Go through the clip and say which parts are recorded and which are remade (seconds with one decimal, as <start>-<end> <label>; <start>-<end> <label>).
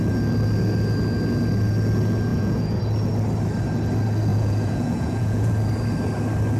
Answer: 0.0-2.3 recorded; 2.3-2.8 remade; 2.8-4.3 recorded; 4.3-5.5 remade; 5.5-6.6 recorded